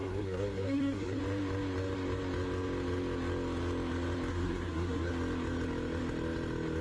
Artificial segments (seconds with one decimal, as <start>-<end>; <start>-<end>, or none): 0.0-1.2; 4.3-5.1